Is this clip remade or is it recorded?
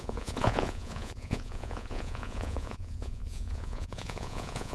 remade